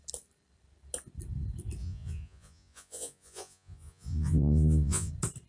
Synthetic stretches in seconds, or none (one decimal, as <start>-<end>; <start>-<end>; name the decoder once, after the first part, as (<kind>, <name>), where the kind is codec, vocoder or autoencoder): 1.8-5.1 (vocoder, Vocos)